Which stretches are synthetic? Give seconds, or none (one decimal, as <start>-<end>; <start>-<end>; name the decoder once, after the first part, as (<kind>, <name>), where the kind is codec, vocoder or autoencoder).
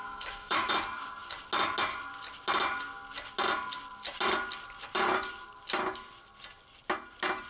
0.0-0.7 (autoencoder, DAC-VAE)